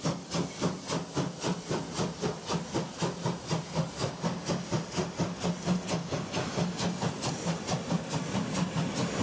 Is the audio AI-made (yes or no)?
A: no